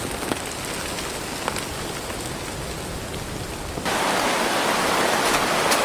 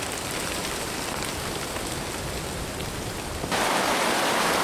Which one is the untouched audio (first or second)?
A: first